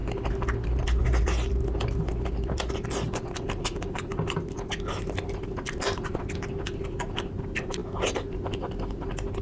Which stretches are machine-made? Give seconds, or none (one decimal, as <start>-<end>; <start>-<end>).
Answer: none